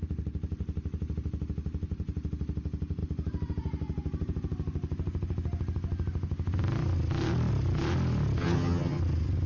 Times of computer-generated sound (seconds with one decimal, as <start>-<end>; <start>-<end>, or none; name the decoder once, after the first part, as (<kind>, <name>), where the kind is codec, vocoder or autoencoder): 8.4-9.0 (vocoder, HiFi-GAN)